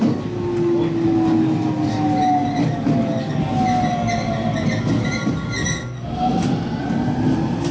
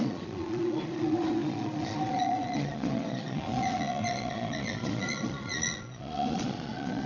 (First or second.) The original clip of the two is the first